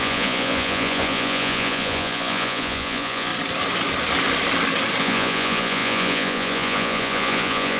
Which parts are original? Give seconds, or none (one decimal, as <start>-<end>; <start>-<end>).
3.3-5.0